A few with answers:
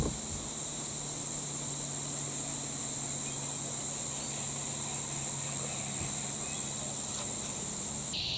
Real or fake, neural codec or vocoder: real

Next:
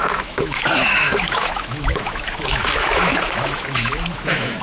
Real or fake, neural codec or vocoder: fake, autoencoder, DAC-VAE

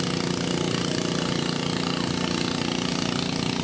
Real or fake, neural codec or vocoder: real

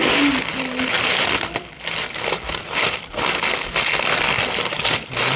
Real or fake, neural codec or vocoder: real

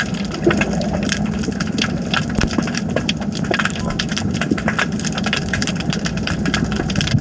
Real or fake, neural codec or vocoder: fake, vocoder, BigVGAN v2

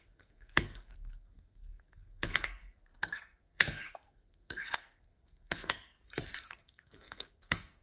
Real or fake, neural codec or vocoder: fake, codec, SNAC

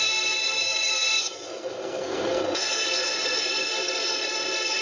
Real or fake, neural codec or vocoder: fake, codec, SNAC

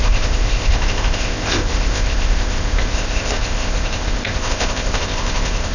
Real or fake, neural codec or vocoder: fake, codec, ZipCodec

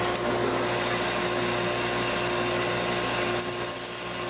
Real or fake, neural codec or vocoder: real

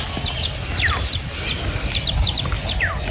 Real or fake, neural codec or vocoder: real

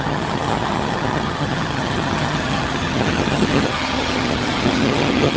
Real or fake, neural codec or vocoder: fake, vocoder, HiFi-GAN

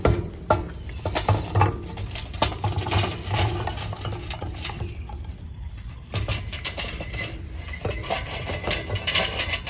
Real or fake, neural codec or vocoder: fake, vocoder, BigVGAN v2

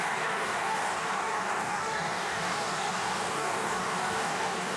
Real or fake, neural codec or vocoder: fake, codec, DAC